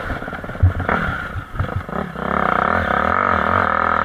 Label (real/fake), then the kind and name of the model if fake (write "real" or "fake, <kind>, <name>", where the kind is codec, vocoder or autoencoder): real